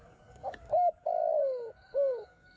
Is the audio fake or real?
fake